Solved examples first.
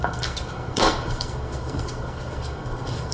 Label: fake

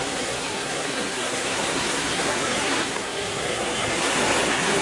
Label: fake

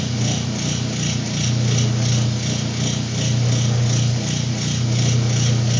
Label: real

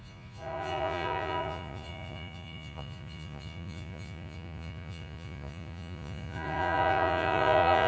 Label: fake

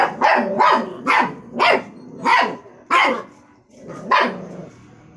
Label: real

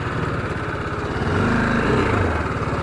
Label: real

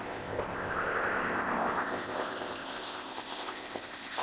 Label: fake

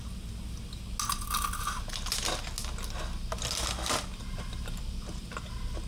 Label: real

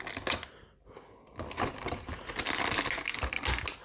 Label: real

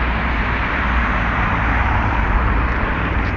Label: fake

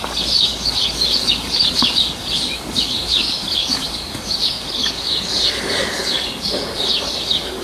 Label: fake